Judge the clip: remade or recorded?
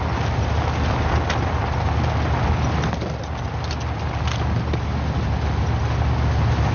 recorded